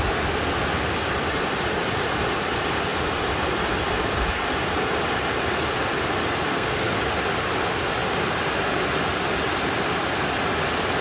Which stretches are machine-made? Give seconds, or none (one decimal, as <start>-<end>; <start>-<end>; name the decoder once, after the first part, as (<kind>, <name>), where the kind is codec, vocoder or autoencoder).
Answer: 6.5-7.0 (codec, SNAC)